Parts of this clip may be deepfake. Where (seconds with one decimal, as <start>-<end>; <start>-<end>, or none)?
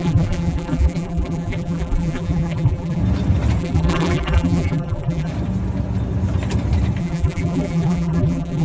0.0-3.0; 3.6-5.3; 7.0-8.6